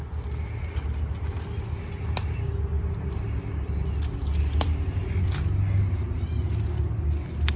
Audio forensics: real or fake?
real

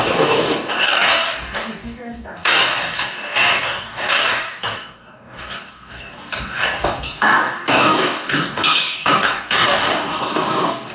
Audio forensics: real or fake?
fake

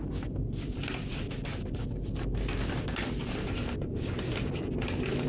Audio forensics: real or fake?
real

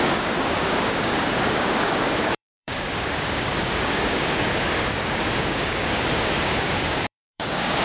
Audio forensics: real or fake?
fake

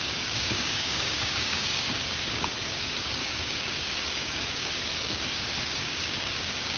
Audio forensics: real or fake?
fake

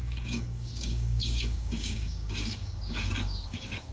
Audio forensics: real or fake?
fake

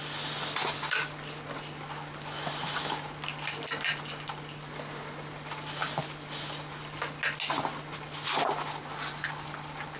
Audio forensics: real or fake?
real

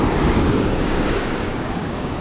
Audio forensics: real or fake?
fake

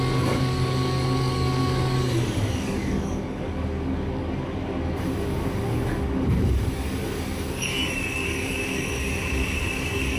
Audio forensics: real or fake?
fake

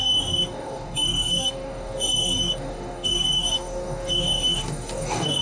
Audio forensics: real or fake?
fake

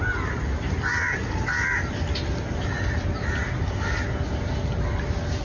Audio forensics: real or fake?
real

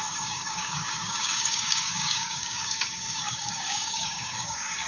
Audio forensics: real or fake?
fake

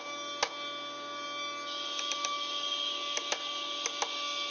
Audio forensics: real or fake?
real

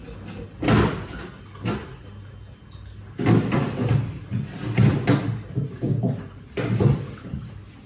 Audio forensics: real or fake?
real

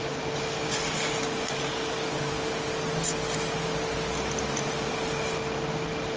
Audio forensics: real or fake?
real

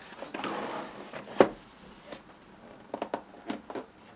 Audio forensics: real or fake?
real